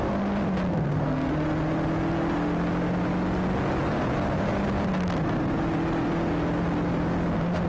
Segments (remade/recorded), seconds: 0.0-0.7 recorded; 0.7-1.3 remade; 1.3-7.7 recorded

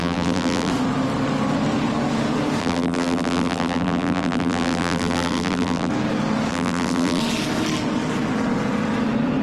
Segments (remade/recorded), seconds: 0.0-0.7 remade; 0.7-2.6 recorded; 2.6-5.9 remade; 5.9-6.5 recorded; 6.5-7.2 remade; 7.2-9.4 recorded

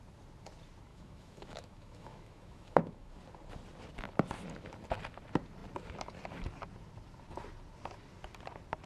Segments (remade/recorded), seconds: 0.0-0.9 recorded; 0.9-3.2 remade; 3.2-8.9 recorded

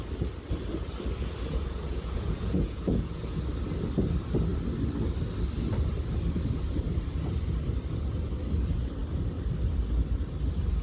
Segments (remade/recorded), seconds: 0.0-1.2 recorded; 1.2-3.4 remade; 3.4-10.8 recorded

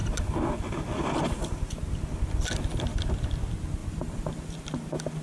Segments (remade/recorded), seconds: 0.0-3.8 recorded; 3.8-4.6 remade; 4.6-5.2 recorded

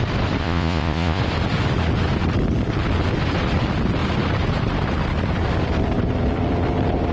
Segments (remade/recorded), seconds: 0.0-0.4 recorded; 0.4-1.2 remade; 1.2-7.1 recorded

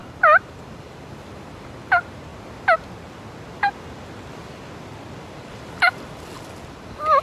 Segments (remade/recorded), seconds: 0.0-0.6 recorded; 0.6-2.3 remade; 2.3-5.2 recorded; 5.2-7.2 remade